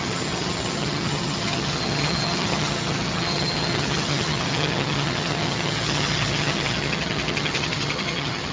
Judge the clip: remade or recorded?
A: remade